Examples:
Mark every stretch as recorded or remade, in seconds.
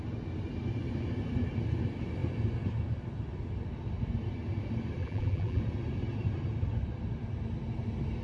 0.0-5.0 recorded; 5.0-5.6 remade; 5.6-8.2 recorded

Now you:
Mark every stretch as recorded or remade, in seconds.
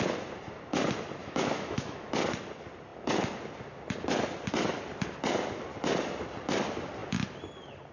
0.0-1.2 recorded; 1.2-2.1 remade; 2.1-7.9 recorded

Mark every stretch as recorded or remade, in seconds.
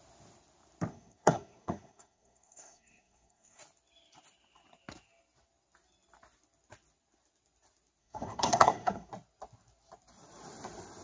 0.0-0.9 recorded; 0.9-3.6 remade; 3.6-8.0 recorded; 8.0-9.1 remade; 9.1-11.0 recorded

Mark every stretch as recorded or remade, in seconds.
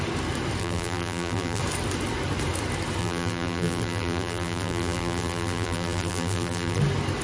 0.0-0.6 recorded; 0.6-1.6 remade; 1.6-3.0 recorded; 3.0-6.8 remade; 6.8-7.2 recorded